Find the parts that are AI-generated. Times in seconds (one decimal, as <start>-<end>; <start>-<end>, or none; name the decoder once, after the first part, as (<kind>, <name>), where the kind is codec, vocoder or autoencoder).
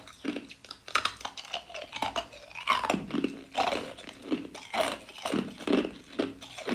none